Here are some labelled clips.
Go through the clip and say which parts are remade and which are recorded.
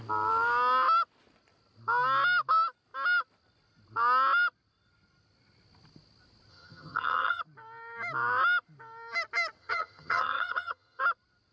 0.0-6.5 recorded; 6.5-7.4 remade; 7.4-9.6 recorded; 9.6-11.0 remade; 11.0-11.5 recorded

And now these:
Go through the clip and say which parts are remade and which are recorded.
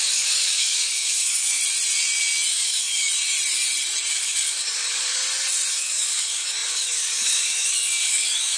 0.0-1.6 remade; 1.6-2.5 recorded; 2.5-3.1 remade; 3.1-4.1 recorded; 4.1-5.2 remade; 5.2-5.7 recorded; 5.7-8.6 remade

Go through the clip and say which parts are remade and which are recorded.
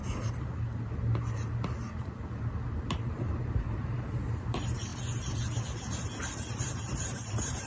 0.0-2.9 recorded; 2.9-7.7 remade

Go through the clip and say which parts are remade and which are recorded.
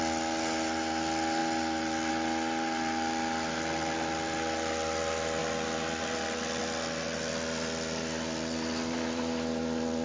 0.0-10.0 recorded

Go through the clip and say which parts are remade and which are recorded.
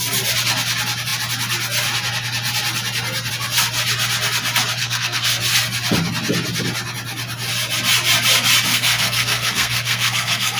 0.0-4.8 recorded; 4.8-5.4 remade; 5.4-8.7 recorded; 8.7-10.6 remade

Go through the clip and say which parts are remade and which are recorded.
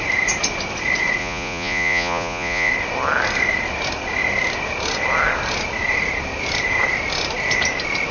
0.0-1.2 recorded; 1.2-2.7 remade; 2.7-8.1 recorded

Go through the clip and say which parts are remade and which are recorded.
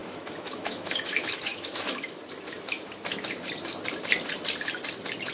0.0-2.2 remade; 2.2-5.3 recorded